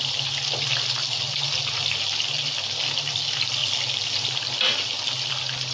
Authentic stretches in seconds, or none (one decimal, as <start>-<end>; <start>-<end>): 0.0-5.7